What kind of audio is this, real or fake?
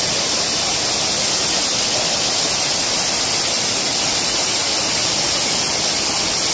real